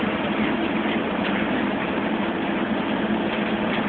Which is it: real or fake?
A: real